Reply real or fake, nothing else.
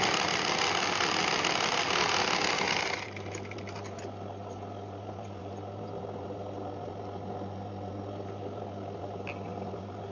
real